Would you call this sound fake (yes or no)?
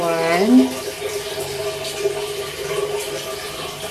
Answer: no